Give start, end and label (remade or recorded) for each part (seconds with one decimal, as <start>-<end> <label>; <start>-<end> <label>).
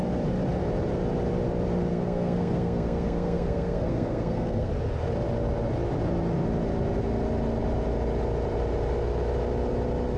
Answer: 0.0-1.9 recorded; 1.9-4.7 remade; 4.7-10.2 recorded